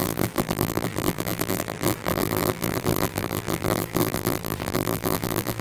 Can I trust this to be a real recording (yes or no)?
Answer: no